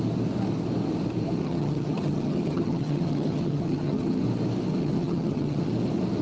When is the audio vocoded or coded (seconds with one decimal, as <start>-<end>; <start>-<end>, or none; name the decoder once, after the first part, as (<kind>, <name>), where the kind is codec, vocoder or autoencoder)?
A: 1.4-4.2 (vocoder, HiFi-GAN); 4.8-5.7